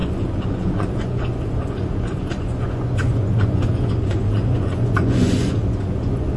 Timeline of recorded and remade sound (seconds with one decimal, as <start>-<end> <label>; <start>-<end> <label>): 0.0-6.4 remade